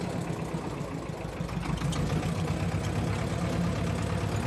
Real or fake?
real